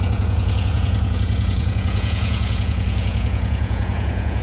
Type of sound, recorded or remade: remade